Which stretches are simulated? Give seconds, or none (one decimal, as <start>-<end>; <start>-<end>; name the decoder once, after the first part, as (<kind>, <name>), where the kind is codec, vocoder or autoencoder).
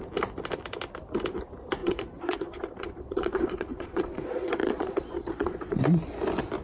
1.8-5.8 (vocoder, Vocos)